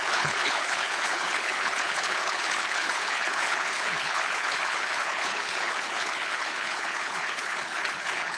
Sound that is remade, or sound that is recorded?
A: remade